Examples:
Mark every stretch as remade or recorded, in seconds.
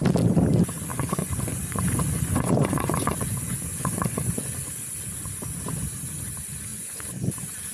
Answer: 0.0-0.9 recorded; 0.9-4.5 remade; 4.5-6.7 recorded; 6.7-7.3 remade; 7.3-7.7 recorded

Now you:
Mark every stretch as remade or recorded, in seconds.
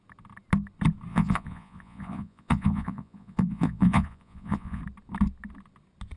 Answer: 0.0-1.1 recorded; 1.1-4.8 remade; 4.8-6.2 recorded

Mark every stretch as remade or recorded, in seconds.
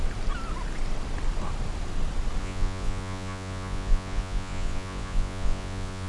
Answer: 0.0-2.4 recorded; 2.4-6.1 remade